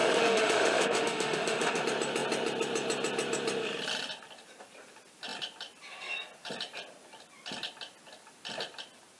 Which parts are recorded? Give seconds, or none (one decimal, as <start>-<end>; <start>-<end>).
1.8-9.2